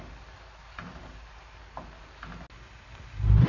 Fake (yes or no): no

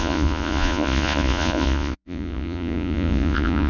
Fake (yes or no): yes